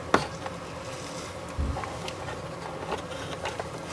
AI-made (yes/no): no